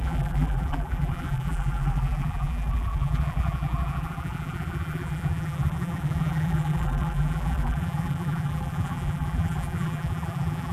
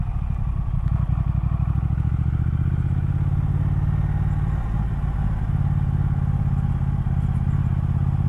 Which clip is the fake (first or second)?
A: first